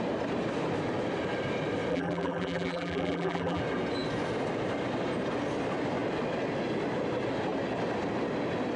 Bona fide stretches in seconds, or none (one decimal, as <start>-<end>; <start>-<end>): 0.0-1.9; 3.6-8.8